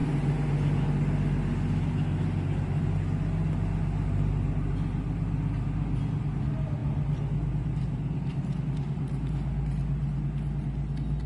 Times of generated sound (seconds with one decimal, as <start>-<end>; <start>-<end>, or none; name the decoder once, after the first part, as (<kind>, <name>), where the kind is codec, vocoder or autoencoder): 6.8-8.6 (vocoder, BigVGAN v2)

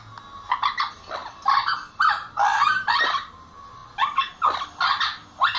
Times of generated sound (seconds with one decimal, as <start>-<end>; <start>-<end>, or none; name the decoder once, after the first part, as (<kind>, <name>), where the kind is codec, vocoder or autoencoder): 1.2-3.3 (vocoder, BigVGAN v2)

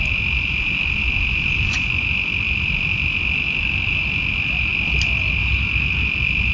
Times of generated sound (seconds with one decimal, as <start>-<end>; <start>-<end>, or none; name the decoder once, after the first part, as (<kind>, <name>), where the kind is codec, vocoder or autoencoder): none

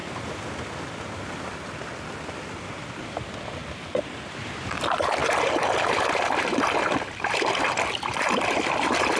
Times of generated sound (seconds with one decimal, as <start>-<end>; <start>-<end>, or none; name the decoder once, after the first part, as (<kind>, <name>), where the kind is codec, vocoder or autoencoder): 1.4-3.6 (vocoder, BigVGAN v2); 4.4-9.2